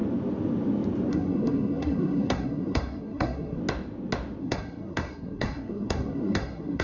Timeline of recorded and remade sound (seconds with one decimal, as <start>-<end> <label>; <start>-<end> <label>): 0.0-1.1 recorded; 1.1-3.6 remade; 3.6-4.4 recorded; 4.4-6.8 remade